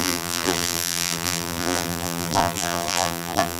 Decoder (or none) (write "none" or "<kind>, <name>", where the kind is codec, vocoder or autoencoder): vocoder, BigVGAN v2